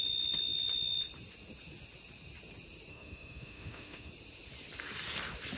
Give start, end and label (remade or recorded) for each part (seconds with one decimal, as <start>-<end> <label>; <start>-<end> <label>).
0.0-2.9 recorded; 2.9-4.1 remade; 4.1-5.6 recorded